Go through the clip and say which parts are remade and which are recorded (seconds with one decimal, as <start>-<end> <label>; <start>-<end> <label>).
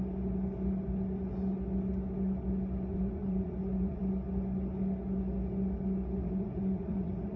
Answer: 0.0-2.9 recorded; 2.9-4.0 remade; 4.0-6.2 recorded; 6.2-7.4 remade